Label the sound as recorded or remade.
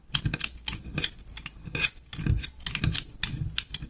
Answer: recorded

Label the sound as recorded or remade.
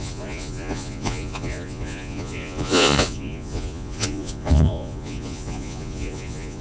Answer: remade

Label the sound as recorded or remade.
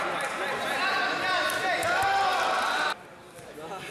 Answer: recorded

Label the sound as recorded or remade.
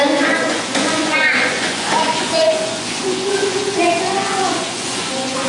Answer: remade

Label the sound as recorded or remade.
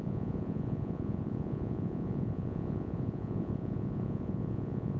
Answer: remade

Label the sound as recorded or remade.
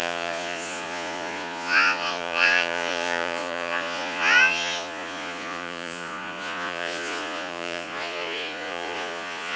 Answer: remade